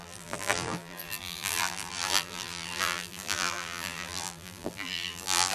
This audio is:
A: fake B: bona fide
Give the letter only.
A